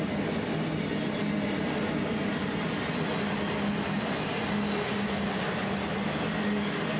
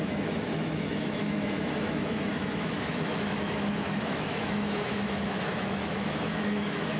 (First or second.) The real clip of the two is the first